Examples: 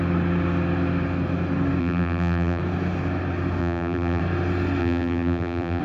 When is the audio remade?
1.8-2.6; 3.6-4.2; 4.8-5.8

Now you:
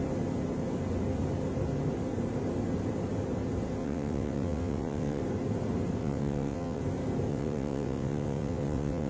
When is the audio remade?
3.8-5.2; 6.0-6.8; 7.3-9.1

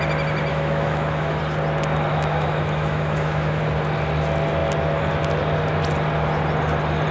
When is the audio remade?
0.5-1.4; 2.1-3.6